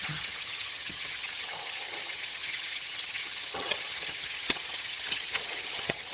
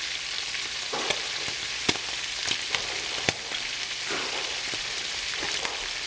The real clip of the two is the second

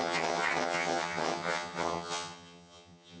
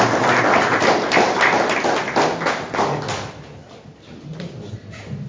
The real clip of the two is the second